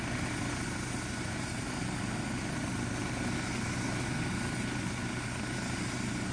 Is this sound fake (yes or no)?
no